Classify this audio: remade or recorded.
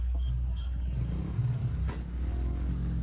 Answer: remade